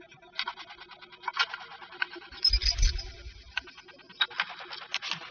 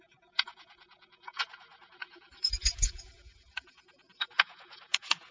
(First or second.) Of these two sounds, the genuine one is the first